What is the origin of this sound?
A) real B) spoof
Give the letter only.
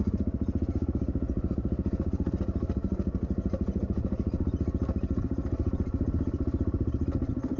A